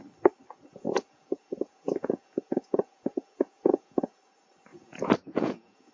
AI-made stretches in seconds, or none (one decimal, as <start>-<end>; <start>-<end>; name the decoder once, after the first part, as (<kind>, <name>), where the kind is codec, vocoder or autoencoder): 0.7-4.2 (vocoder, Vocos); 4.7-5.9